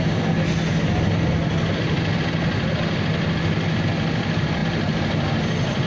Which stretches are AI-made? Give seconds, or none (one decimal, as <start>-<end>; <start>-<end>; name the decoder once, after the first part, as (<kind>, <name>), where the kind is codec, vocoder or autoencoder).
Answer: none